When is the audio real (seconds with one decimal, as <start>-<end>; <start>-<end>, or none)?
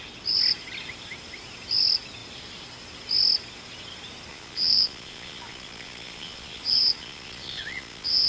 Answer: 0.0-4.3